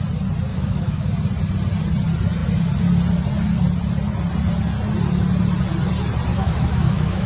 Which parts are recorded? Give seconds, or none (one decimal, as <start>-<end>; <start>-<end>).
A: 0.0-0.5; 1.1-6.3